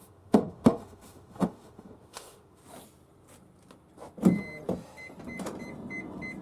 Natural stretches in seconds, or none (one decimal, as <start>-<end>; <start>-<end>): 2.6-6.4

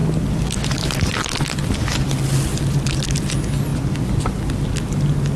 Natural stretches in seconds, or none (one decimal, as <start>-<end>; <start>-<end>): 0.0-5.4

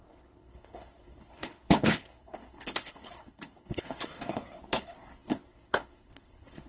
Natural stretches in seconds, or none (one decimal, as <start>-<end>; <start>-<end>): none

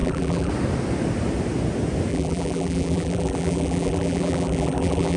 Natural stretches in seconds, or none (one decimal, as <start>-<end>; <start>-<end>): 0.5-2.1